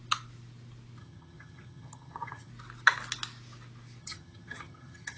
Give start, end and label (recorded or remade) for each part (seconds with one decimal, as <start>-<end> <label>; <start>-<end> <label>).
0.0-1.0 recorded; 1.0-2.5 remade; 2.5-4.0 recorded; 4.0-5.2 remade